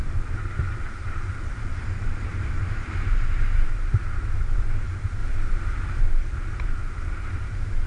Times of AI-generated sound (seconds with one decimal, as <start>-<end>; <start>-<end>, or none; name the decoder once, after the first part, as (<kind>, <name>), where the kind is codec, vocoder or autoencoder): 0.0-5.2 (vocoder, BigVGAN v2); 6.0-7.9